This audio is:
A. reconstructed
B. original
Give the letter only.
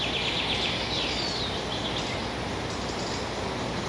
B